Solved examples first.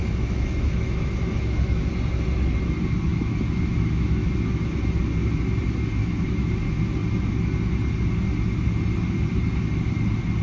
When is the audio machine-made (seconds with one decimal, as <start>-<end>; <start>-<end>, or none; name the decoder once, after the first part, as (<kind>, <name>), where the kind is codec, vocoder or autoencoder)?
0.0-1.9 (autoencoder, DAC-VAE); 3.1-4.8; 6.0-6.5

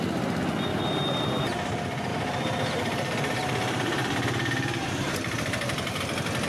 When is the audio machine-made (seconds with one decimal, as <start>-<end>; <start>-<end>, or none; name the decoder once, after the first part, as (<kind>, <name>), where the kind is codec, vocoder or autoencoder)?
0.7-1.4 (vocoder, BigVGAN v2); 2.1-6.0

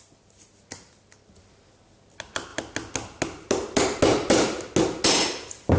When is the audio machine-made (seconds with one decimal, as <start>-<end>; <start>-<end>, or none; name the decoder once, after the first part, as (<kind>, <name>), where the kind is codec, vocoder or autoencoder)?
none

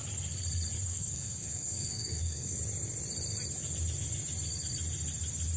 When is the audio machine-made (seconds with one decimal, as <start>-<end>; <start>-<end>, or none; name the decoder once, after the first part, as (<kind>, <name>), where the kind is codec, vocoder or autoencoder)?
0.9-2.6 (codec, SNAC)

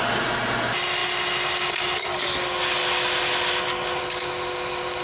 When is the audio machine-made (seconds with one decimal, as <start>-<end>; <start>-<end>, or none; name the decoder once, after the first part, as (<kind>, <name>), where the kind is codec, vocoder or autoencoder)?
none

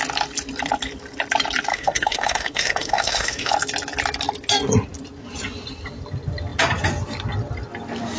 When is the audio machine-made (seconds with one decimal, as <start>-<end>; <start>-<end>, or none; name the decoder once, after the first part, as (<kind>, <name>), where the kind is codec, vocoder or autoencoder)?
1.7-3.5 (autoencoder, DAC-VAE)

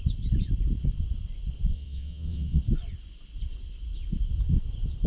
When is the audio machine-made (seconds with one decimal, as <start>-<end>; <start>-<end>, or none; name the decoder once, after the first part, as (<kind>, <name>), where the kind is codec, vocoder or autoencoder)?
1.7-2.6 (vocoder, WaveNeXt)

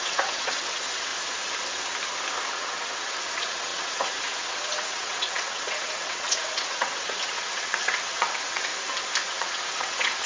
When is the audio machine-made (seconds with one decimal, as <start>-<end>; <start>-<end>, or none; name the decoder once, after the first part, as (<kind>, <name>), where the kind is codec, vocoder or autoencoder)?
0.0-1.1 (vocoder, WaveNeXt); 2.5-8.7; 9.3-10.3